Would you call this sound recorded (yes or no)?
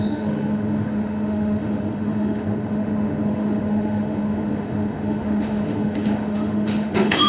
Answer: no